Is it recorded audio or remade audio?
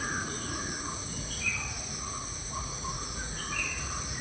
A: remade